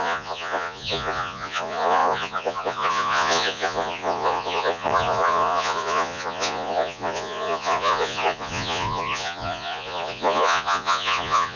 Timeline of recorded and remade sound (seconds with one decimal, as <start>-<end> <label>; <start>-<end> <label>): 0.0-11.6 remade